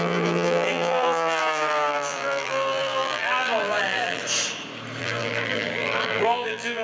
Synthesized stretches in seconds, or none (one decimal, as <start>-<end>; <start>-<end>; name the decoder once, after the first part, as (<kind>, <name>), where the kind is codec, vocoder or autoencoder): 0.0-4.2 (vocoder, BigVGAN v2); 5.0-6.8